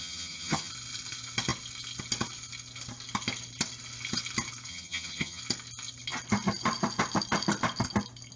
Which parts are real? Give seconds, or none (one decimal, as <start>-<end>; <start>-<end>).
0.7-4.7; 5.4-8.4